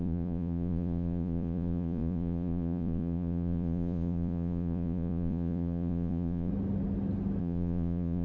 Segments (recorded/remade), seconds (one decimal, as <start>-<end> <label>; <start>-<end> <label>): 0.0-6.5 remade; 6.5-7.4 recorded; 7.4-8.2 remade